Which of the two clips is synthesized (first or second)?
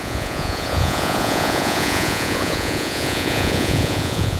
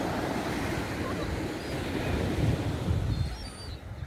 first